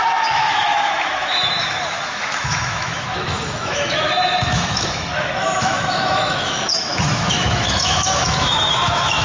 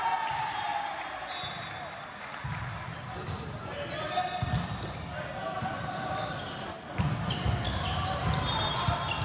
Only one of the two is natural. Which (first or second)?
second